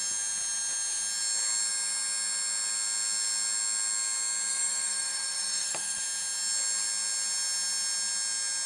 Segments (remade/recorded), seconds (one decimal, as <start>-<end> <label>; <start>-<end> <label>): 0.0-4.5 recorded; 4.5-6.0 remade; 6.0-8.7 recorded